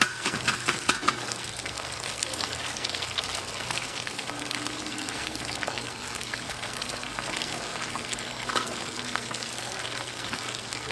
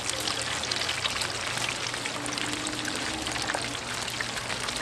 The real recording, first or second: second